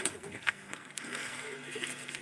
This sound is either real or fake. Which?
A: fake